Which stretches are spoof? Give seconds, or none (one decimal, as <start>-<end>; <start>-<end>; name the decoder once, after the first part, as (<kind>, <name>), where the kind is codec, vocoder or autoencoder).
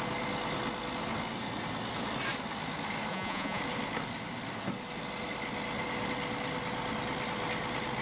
3.1-3.6 (vocoder, Vocos)